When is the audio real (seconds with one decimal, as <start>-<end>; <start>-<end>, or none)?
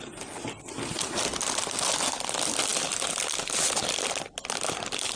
0.0-5.2